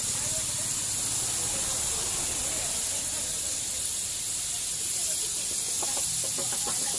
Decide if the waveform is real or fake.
real